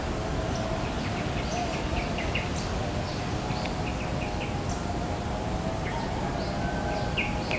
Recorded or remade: recorded